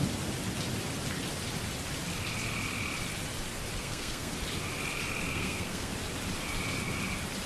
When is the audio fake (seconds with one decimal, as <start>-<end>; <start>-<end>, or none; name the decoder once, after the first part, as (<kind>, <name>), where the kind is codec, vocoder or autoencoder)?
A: 3.8-4.3 (codec, SNAC); 5.3-5.9